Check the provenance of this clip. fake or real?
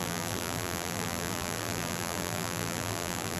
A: fake